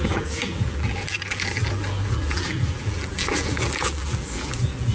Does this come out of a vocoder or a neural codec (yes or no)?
yes